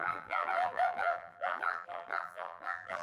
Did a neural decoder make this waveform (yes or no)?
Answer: yes